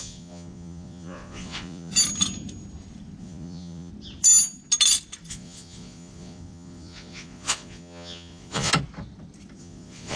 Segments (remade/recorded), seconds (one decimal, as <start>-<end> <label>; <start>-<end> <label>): 0.0-1.9 remade; 1.9-3.2 recorded; 3.2-3.9 remade; 3.9-5.3 recorded; 5.3-8.7 remade; 8.7-9.6 recorded; 9.6-10.2 remade